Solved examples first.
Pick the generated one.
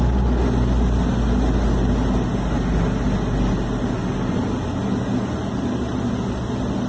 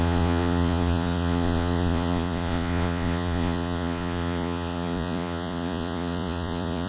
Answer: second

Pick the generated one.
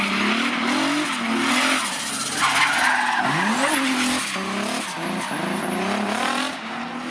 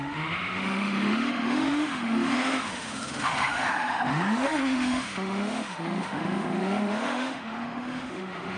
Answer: second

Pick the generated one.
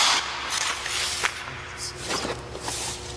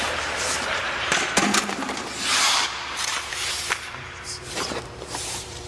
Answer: second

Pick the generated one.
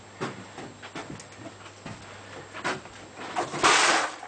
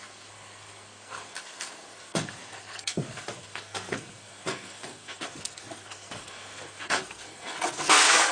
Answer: second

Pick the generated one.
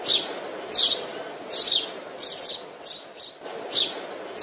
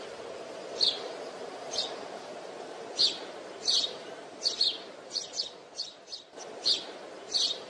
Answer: second